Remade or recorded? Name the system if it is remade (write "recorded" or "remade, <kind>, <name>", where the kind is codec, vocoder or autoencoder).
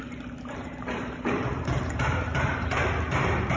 remade, vocoder, BigVGAN v2